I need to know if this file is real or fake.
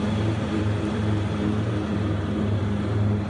fake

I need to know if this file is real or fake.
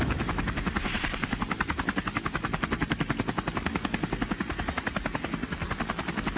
real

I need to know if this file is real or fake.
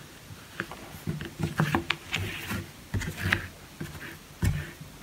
real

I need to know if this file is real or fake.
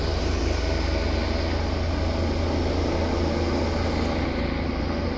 real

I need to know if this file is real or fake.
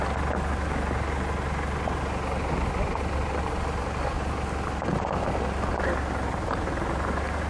real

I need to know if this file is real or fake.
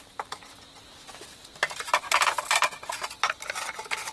real